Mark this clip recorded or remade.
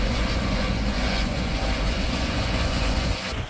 remade